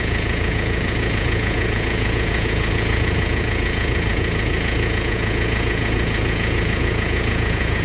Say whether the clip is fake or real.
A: fake